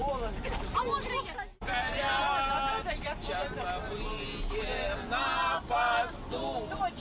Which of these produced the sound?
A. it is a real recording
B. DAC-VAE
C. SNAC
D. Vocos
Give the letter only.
A